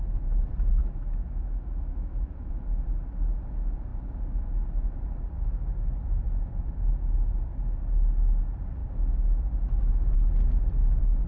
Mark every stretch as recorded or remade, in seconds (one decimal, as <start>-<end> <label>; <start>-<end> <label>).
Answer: 0.0-0.8 recorded; 0.8-2.5 remade; 2.5-11.3 recorded